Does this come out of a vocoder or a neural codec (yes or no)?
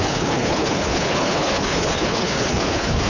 yes